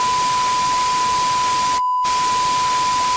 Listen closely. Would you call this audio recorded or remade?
recorded